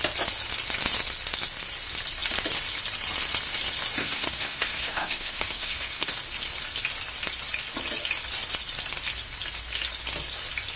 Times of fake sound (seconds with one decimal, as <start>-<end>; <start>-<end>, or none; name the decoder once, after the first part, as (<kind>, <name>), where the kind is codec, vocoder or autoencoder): 4.0-6.1 (codec, SNAC)